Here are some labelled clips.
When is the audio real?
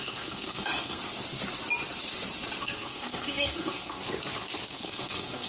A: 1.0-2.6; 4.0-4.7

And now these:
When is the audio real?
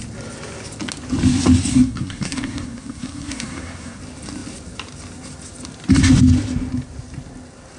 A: 0.0-1.7; 4.0-7.8